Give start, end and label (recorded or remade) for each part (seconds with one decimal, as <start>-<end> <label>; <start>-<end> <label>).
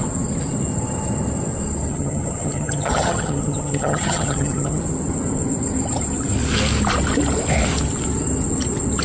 0.0-1.9 recorded; 1.9-4.8 remade; 4.8-9.0 recorded